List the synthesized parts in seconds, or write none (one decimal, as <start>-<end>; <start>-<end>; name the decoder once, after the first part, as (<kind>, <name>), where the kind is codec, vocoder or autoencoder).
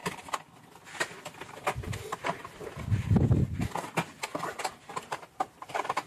0.0-0.6 (vocoder, BigVGAN v2)